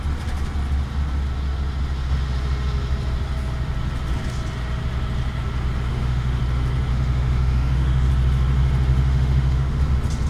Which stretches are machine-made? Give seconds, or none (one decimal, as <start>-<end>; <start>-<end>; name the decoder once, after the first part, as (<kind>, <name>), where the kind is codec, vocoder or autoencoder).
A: 5.9-6.4 (autoencoder, DAC-VAE); 6.9-8.1; 8.9-9.8